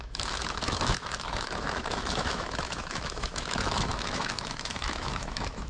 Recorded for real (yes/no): no